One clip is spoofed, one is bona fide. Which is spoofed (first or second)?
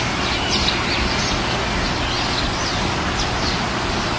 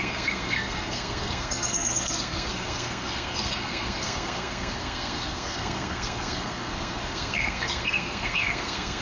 second